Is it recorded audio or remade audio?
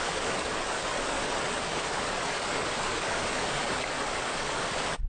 remade